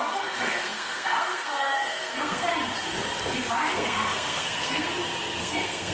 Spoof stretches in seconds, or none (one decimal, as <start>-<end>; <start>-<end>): 0.0-2.5; 3.5-4.9; 5.4-5.9